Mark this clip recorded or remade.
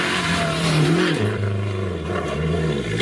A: recorded